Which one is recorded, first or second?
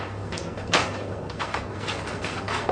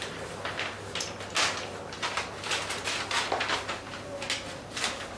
second